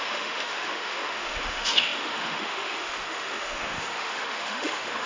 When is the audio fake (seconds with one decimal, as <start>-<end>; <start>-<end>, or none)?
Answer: 0.0-5.1